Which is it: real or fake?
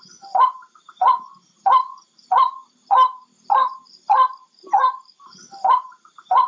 fake